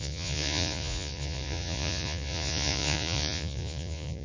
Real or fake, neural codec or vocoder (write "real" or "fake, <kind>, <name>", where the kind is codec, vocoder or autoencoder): fake, vocoder, Vocos